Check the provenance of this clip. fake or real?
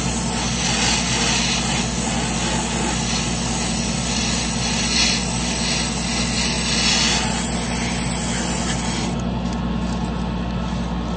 real